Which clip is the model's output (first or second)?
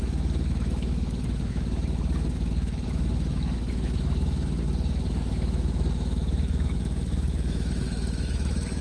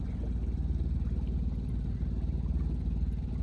first